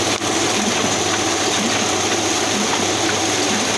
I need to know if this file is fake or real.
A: fake